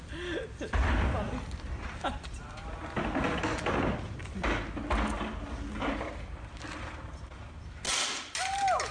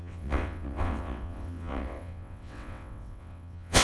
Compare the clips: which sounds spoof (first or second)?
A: second